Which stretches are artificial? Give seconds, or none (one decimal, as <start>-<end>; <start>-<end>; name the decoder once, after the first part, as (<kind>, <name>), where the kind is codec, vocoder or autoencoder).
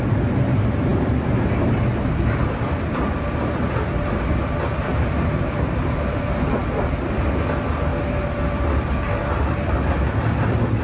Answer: none